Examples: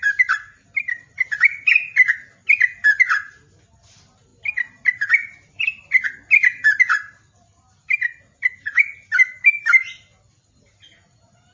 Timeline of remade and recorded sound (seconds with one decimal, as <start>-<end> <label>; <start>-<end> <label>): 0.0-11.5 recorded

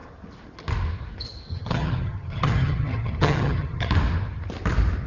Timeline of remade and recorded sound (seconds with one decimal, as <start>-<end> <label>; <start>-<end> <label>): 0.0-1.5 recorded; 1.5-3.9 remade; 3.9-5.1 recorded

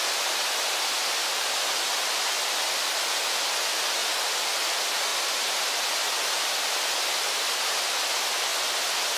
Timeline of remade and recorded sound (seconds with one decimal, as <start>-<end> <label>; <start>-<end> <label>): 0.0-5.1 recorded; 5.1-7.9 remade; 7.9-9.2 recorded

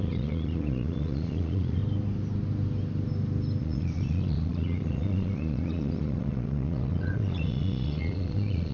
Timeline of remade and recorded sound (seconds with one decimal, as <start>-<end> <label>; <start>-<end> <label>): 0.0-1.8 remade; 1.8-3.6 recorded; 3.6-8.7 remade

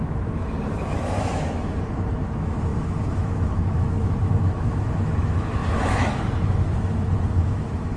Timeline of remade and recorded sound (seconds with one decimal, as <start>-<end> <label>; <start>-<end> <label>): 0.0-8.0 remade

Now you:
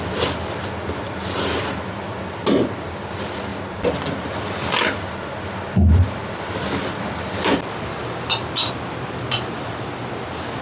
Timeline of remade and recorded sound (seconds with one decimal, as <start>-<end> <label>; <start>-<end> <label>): 0.0-10.6 recorded

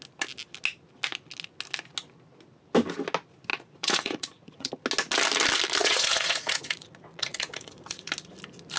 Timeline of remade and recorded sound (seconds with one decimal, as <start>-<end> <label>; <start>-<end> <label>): 0.0-3.5 recorded; 3.5-4.7 remade; 4.7-5.8 recorded; 5.8-8.1 remade; 8.1-8.8 recorded

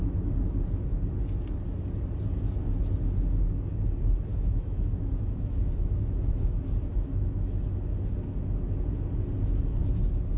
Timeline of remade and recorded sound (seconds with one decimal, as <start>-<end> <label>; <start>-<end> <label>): 0.0-4.3 recorded; 4.3-7.6 remade; 7.6-10.4 recorded